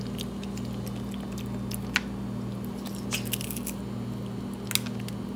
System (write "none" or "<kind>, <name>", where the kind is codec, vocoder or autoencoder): none